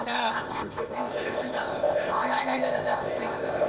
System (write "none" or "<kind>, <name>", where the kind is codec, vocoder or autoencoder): codec, ZipCodec